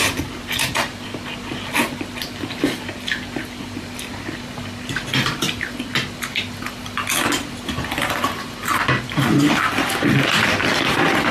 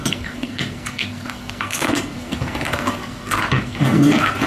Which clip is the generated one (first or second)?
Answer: second